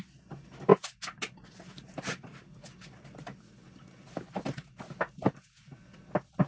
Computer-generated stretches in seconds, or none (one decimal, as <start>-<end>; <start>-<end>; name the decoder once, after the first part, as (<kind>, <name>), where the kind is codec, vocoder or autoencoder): none

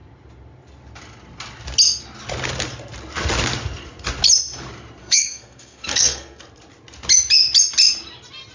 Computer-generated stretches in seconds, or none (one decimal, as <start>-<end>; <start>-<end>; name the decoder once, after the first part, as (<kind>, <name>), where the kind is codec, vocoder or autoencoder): 5.0-6.4 (codec, SNAC)

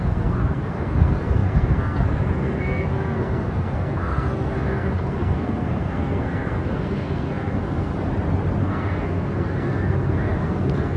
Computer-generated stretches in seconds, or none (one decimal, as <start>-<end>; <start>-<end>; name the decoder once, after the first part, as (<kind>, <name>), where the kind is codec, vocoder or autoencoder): 0.0-7.9 (codec, SNAC); 8.6-11.0

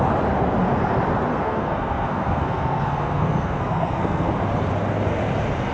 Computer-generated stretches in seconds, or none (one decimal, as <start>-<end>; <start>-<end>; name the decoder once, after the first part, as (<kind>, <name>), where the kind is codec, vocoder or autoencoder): 1.3-4.3 (codec, SNAC)

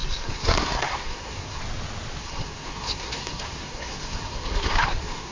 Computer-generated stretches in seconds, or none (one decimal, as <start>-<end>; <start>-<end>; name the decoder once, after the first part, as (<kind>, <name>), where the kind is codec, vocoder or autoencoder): 0.0-1.6 (codec, SNAC); 2.2-5.3

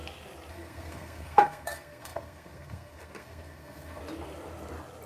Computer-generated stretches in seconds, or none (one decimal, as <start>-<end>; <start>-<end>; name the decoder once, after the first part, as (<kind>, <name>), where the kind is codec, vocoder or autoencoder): 0.5-4.0 (codec, SNAC)